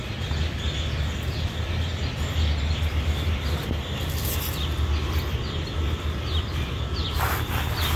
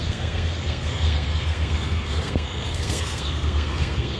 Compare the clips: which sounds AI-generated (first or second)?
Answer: second